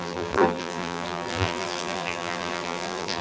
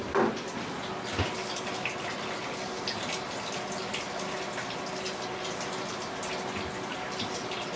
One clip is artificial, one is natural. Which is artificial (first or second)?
first